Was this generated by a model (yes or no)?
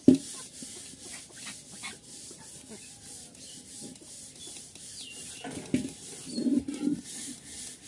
no